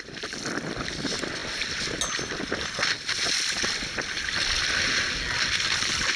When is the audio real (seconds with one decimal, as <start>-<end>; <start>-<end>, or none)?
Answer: 0.0-6.2